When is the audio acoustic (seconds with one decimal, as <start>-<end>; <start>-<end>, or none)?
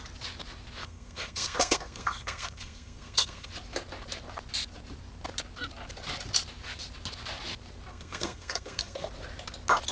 0.0-0.8; 3.5-7.9; 9.1-9.9